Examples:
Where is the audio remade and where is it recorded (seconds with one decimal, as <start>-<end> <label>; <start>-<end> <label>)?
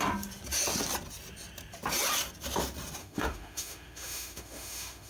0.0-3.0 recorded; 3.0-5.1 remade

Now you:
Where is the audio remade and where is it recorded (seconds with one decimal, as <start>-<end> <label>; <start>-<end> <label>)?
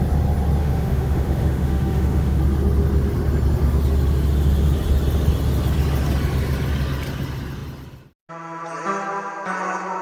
0.0-0.6 recorded; 0.6-2.4 remade; 2.4-10.0 recorded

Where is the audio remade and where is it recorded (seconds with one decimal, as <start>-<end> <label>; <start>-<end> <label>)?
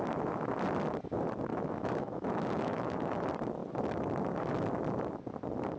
0.0-1.5 recorded; 1.5-3.2 remade; 3.2-5.8 recorded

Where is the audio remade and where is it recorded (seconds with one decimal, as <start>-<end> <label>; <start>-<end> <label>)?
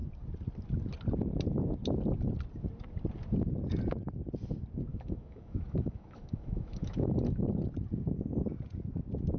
0.0-4.9 recorded; 4.9-7.2 remade; 7.2-9.4 recorded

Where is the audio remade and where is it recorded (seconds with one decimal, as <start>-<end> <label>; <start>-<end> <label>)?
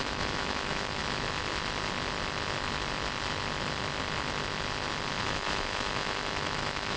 0.0-1.0 remade; 1.0-5.2 recorded; 5.2-7.0 remade